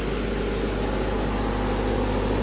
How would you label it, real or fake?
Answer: real